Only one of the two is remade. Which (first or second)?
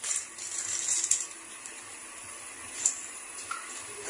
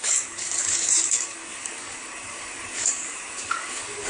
second